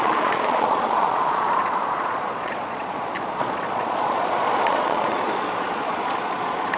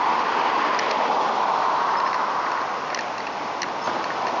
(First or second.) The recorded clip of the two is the second